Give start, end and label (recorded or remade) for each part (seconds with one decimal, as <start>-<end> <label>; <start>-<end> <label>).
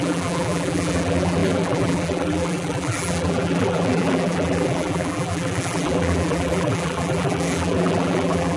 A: 0.0-8.6 remade